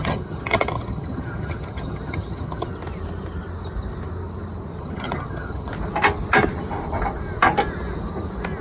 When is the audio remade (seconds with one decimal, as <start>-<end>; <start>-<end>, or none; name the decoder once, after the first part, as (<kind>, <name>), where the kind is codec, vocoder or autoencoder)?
0.0-2.7 (vocoder, HiFi-GAN); 4.8-5.7